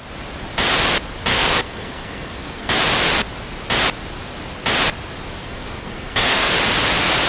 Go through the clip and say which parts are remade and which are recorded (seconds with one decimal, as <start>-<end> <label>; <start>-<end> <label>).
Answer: 0.0-1.3 recorded; 1.3-2.8 remade; 2.8-5.4 recorded; 5.4-6.5 remade; 6.5-7.3 recorded